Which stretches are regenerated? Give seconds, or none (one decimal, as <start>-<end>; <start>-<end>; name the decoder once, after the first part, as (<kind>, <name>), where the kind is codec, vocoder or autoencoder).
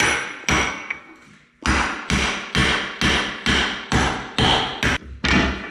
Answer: 0.7-1.3 (codec, SNAC)